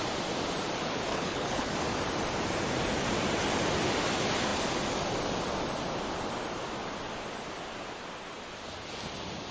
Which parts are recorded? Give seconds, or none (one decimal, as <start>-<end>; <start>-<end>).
0.0-1.1; 1.7-9.5